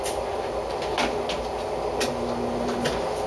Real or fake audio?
real